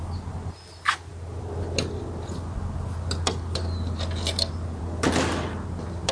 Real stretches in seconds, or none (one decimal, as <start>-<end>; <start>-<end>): 0.0-6.1